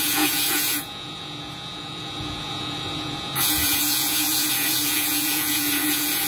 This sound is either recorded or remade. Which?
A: remade